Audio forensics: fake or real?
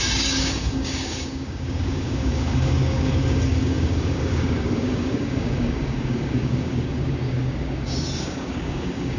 fake